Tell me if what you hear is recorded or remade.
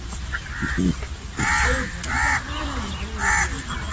recorded